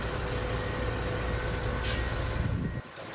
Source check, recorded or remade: recorded